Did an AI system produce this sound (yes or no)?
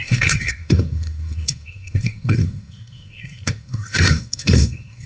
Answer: yes